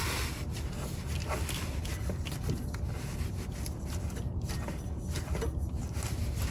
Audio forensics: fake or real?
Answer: real